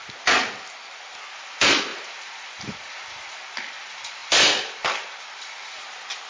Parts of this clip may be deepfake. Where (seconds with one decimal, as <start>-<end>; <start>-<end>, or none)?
none